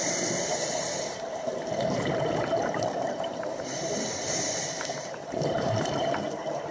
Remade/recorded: remade